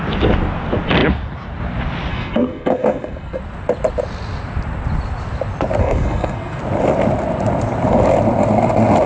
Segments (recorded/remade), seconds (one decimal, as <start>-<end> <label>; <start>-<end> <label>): 0.0-2.1 recorded; 2.1-3.4 remade; 3.4-5.8 recorded; 5.8-6.6 remade; 6.6-9.1 recorded